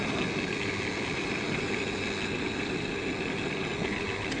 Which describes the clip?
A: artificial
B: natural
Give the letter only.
B